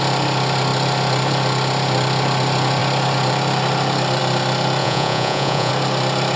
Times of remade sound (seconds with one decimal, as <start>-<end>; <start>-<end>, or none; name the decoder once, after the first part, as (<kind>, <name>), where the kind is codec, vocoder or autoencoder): 4.8-5.7 (vocoder, Vocos)